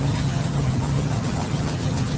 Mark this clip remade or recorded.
remade